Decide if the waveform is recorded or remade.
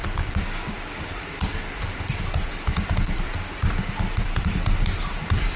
remade